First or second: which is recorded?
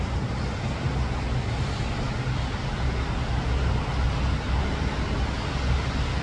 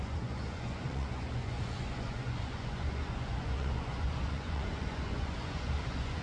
first